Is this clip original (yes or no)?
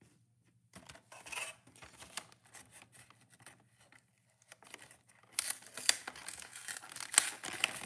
yes